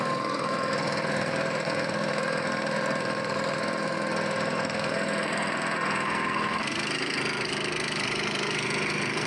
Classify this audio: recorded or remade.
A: remade